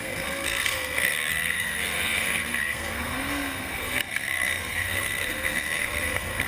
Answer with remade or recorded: remade